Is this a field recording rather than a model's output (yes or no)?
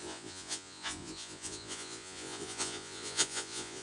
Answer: no